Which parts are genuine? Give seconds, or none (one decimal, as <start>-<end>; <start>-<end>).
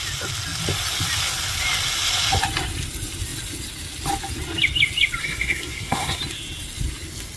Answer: 0.0-5.2; 6.2-7.4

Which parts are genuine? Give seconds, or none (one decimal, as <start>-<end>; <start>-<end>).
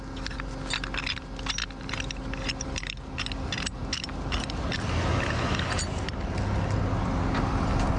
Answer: 0.0-8.0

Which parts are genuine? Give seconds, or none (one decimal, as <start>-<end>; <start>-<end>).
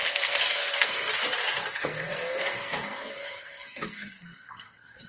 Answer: 1.1-1.6